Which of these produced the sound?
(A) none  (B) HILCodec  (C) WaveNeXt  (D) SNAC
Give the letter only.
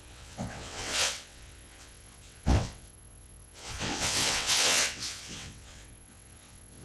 C